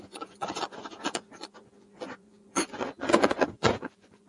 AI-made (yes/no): yes